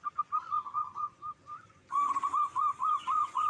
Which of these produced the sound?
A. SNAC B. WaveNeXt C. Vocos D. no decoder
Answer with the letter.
C